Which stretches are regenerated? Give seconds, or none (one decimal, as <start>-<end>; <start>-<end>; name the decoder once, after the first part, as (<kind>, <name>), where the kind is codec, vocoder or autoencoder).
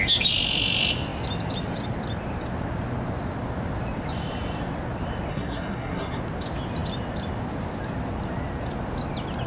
5.3-6.2 (codec, SNAC)